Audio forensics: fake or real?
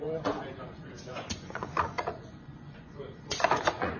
fake